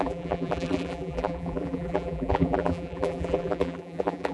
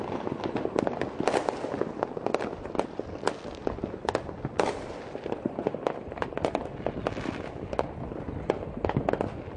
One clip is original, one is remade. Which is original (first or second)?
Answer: second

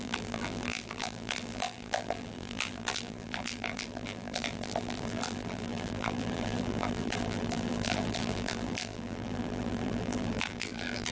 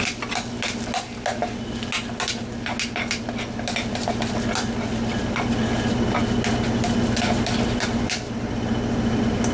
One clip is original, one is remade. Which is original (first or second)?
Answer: second